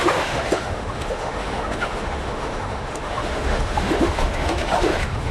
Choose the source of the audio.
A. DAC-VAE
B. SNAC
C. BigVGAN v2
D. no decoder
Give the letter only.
A